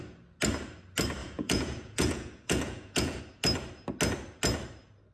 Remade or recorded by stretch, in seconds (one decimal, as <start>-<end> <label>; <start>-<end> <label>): 0.0-1.2 recorded; 1.2-3.2 remade; 3.2-5.1 recorded